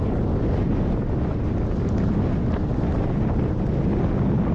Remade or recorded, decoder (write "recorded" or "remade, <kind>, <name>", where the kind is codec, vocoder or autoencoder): recorded